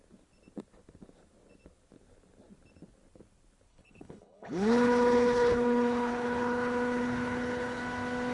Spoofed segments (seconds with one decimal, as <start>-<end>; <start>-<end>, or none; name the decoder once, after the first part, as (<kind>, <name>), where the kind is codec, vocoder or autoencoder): 3.7-7.8 (codec, HILCodec)